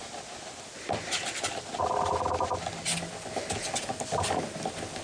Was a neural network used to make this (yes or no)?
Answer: no